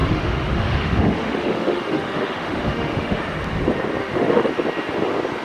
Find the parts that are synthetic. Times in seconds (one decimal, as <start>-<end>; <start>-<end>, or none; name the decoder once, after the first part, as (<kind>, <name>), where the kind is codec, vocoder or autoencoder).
0.0-3.2 (autoencoder, DAC-VAE); 4.0-4.5

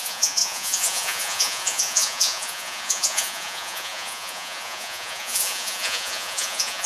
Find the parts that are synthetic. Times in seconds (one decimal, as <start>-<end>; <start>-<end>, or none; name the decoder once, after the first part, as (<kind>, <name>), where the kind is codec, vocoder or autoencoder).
0.0-6.9 (vocoder, Vocos)

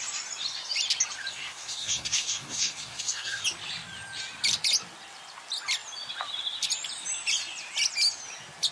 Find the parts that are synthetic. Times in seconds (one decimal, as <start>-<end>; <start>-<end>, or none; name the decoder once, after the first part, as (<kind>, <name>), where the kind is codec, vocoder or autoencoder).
1.3-3.4 (codec, SNAC)

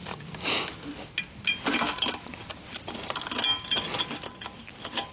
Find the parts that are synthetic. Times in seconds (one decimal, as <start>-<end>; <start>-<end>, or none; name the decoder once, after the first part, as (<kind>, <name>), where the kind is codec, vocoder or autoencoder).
none

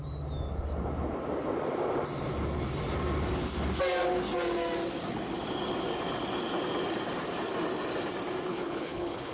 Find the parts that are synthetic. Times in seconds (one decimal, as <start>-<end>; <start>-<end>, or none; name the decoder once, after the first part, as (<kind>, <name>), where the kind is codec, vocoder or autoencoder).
8.5-9.3 (codec, HILCodec)

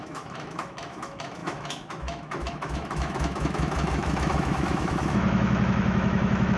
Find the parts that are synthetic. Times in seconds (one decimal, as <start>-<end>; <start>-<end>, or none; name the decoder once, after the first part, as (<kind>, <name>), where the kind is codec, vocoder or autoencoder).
0.0-6.6 (autoencoder, DAC-VAE)

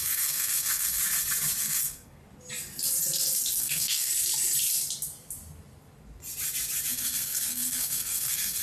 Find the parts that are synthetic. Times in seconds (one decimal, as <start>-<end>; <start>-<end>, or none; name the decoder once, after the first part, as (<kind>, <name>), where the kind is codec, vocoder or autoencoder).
0.0-1.0 (codec, SNAC); 1.6-2.2; 3.6-4.1; 6.9-8.6

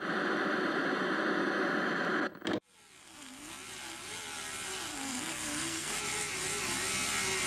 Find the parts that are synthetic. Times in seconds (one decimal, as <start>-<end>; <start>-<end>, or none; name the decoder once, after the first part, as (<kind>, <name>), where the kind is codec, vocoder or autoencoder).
3.0-3.5 (codec, SNAC); 4.9-6.0